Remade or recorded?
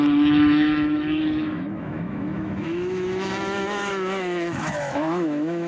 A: remade